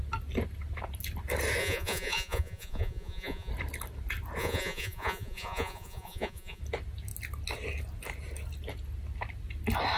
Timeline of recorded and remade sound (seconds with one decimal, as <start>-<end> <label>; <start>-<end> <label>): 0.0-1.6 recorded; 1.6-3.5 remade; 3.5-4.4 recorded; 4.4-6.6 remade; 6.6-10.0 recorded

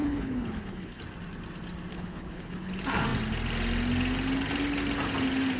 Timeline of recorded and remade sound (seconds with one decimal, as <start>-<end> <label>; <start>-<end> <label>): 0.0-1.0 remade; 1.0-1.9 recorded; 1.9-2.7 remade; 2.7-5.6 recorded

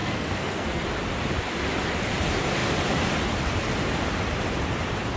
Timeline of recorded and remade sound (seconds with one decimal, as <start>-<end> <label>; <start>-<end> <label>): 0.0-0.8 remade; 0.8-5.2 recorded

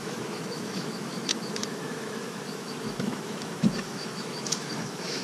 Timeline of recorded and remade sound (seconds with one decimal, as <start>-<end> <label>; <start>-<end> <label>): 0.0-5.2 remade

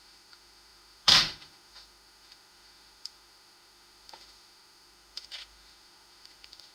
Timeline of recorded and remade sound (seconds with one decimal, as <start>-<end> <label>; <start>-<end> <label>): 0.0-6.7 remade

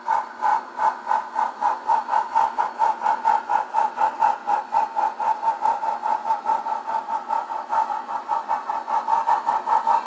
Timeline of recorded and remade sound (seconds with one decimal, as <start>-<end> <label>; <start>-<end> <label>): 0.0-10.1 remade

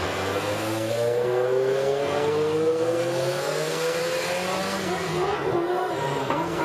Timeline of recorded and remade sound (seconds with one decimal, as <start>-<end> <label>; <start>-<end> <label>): 0.0-4.0 remade; 4.0-4.6 recorded; 4.6-6.6 remade